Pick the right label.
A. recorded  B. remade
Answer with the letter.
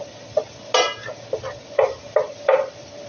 A